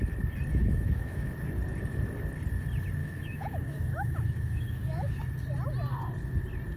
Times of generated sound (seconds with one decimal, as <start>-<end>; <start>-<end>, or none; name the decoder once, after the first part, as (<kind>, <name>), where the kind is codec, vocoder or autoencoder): 0.6-1.3 (autoencoder, DAC-VAE); 3.0-5.2